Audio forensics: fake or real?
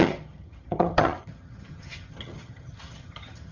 fake